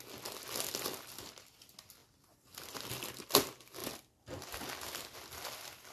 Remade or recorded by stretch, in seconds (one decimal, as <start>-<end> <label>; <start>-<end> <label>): 0.0-5.9 recorded